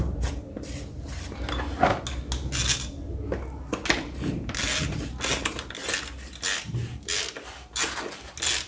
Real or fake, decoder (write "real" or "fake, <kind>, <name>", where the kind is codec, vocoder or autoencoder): real